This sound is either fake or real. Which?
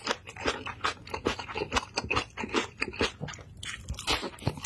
real